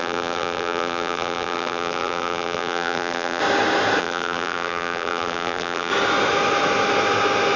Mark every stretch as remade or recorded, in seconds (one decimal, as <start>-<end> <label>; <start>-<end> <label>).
0.0-3.4 remade; 3.4-4.0 recorded; 4.0-5.9 remade; 5.9-7.6 recorded